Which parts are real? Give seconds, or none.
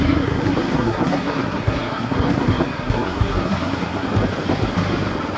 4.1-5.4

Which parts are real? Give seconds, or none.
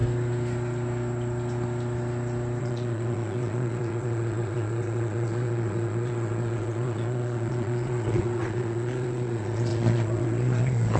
0.0-2.6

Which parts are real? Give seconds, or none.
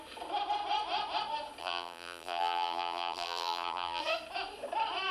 0.0-1.6; 4.0-5.1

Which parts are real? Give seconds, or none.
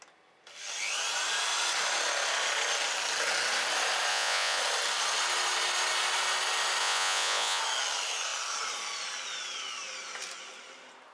0.0-4.1; 4.6-6.8; 7.6-11.1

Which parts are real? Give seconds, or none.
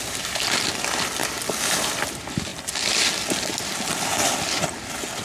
0.0-5.2